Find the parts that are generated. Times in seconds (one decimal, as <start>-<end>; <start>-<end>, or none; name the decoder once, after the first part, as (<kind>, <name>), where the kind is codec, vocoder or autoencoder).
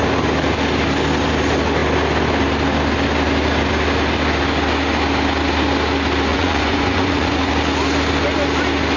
6.3-7.5 (vocoder, Vocos)